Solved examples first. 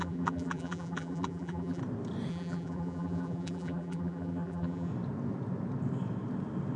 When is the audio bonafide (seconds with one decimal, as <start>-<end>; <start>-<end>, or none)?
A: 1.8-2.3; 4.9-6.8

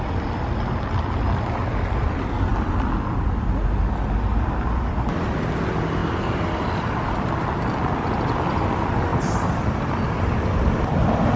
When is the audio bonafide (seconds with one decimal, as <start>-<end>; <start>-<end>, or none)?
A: 0.0-11.4

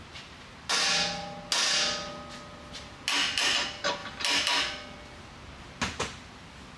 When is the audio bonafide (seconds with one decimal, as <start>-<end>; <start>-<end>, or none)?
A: 0.0-6.8